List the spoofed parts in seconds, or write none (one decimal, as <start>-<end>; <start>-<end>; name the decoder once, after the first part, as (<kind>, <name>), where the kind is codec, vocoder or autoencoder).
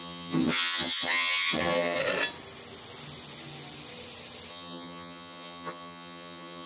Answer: 0.0-2.0 (vocoder, HiFi-GAN); 4.5-6.7